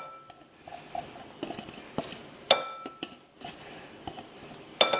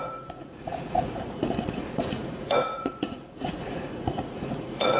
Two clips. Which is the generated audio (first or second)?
second